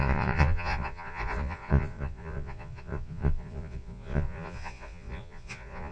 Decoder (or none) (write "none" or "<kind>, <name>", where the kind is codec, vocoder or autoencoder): vocoder, Vocos